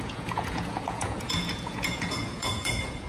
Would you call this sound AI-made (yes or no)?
yes